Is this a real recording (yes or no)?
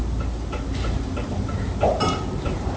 yes